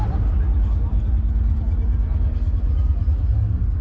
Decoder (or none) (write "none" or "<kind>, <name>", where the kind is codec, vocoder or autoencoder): none